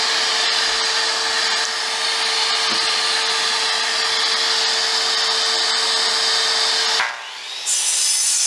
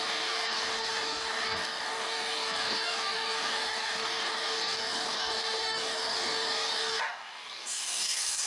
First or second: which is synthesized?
second